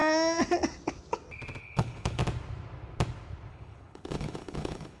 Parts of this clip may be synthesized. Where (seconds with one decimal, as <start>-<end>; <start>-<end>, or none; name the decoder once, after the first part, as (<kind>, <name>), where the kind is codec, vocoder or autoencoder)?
1.6-2.2 (codec, HILCodec); 3.5-5.0